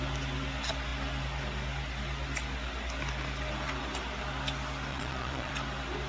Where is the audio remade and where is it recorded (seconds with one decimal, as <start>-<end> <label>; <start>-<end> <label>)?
0.0-4.9 recorded; 4.9-5.5 remade; 5.5-6.1 recorded